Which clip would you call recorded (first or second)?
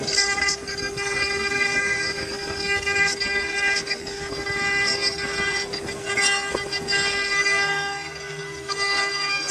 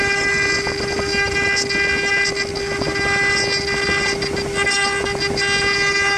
second